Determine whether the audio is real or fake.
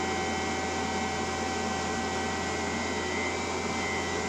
real